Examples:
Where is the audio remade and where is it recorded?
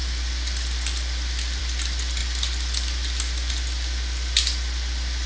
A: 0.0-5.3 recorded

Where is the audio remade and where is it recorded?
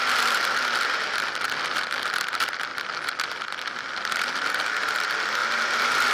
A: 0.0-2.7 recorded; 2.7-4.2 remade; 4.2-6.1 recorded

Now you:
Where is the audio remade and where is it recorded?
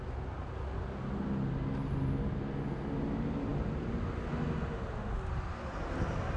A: 0.0-6.4 recorded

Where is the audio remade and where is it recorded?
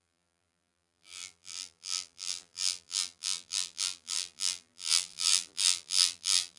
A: 0.0-6.6 remade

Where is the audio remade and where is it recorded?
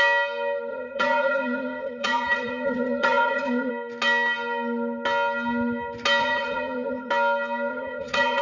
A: 0.0-0.7 recorded; 0.7-3.7 remade; 3.7-6.2 recorded; 6.2-7.1 remade; 7.1-7.7 recorded; 7.7-8.4 remade